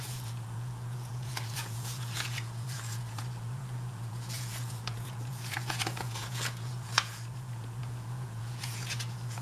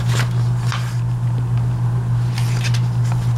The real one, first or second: second